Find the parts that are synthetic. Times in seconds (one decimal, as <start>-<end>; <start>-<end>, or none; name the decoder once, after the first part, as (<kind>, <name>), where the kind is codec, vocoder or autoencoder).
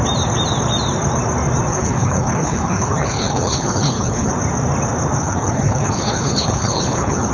1.7-4.3 (codec, HILCodec); 5.2-7.3